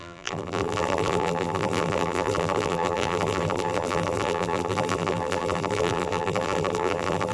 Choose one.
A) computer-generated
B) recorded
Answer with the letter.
A